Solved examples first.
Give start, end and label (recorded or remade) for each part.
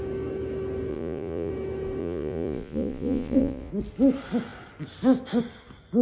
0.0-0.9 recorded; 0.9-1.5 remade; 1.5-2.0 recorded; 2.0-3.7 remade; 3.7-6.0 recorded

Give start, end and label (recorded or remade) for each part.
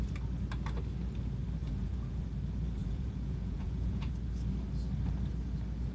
0.0-1.6 recorded; 1.6-2.2 remade; 2.2-2.8 recorded; 2.8-4.1 remade; 4.1-5.9 recorded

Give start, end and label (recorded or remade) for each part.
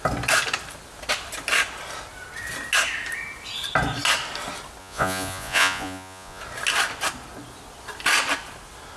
0.0-4.8 recorded; 4.8-6.4 remade; 6.4-9.0 recorded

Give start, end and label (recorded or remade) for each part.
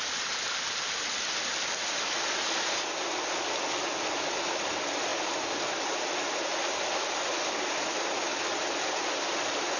0.0-9.8 recorded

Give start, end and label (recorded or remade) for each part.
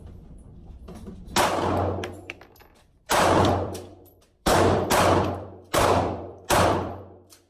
0.0-2.6 recorded; 2.6-7.0 remade; 7.0-7.5 recorded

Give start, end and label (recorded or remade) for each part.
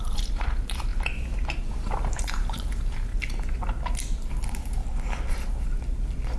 0.0-0.9 remade; 0.9-1.6 recorded; 1.6-3.1 remade; 3.1-4.3 recorded; 4.3-4.8 remade; 4.8-5.3 recorded; 5.3-5.7 remade; 5.7-6.4 recorded